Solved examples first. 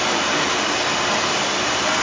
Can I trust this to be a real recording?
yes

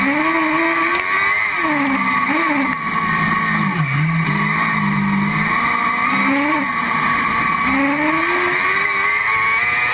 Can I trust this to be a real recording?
yes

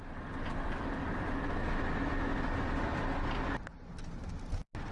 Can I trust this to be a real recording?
yes